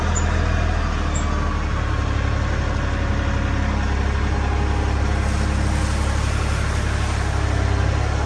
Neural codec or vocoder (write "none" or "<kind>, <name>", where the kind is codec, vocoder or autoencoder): none